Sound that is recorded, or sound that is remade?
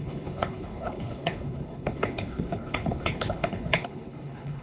remade